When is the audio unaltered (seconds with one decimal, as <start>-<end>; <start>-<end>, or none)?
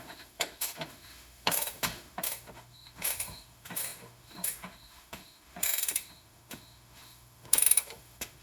none